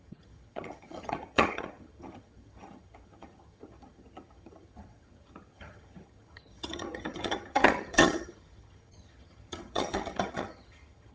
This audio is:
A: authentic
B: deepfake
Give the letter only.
B